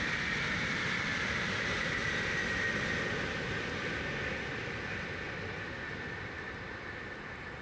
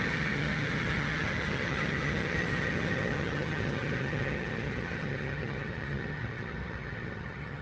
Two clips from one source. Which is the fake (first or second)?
second